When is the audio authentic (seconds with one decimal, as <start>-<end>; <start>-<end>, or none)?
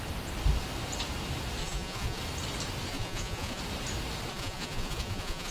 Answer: 0.0-1.6; 2.2-2.9; 3.6-4.3